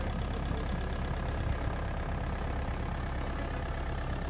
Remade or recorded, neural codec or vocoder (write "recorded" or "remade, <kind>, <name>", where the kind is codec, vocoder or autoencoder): recorded